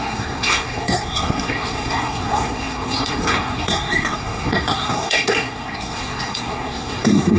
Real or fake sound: fake